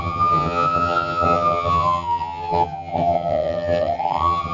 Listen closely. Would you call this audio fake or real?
fake